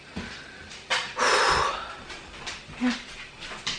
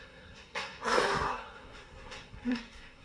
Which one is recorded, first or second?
first